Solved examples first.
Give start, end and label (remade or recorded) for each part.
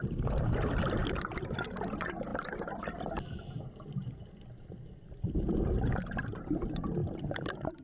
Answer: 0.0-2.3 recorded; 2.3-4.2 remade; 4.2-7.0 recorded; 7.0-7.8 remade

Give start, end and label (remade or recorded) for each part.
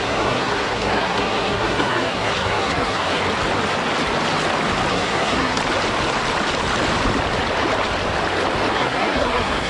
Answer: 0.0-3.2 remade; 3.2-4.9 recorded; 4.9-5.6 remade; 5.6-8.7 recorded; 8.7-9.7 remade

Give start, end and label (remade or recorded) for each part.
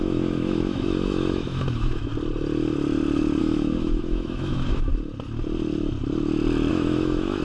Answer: 0.0-2.1 remade; 2.1-3.4 recorded; 3.4-4.9 remade; 4.9-6.7 recorded; 6.7-7.4 remade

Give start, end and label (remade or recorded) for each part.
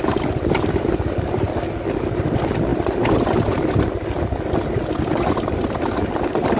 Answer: 0.0-6.6 recorded